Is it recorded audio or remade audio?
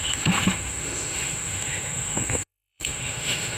remade